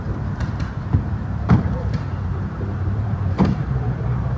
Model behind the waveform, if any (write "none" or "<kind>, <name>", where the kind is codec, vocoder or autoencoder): vocoder, BigVGAN v2